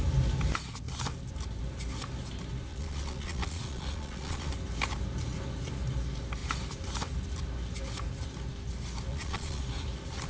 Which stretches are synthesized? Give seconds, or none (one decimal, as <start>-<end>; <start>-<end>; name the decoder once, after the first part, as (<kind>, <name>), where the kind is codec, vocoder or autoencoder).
2.7-4.5 (vocoder, Vocos); 9.1-9.6